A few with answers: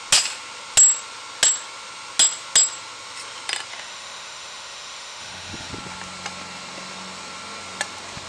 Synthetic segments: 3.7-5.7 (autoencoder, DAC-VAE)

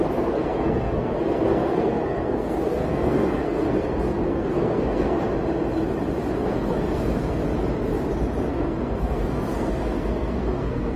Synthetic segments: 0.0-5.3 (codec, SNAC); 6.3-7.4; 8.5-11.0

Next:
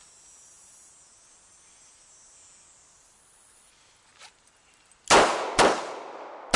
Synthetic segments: none

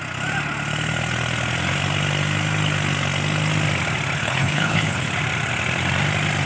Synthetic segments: 4.2-5.1 (codec, HILCodec)

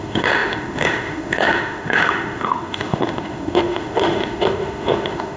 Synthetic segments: 0.0-5.4 (autoencoder, DAC-VAE)

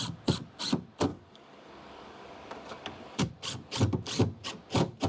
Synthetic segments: 1.1-3.3 (codec, DAC)

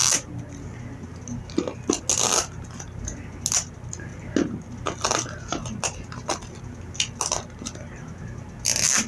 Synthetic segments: none

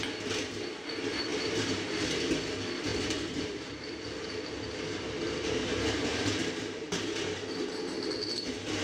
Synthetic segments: 1.3-1.9 (vocoder, BigVGAN v2); 2.9-8.1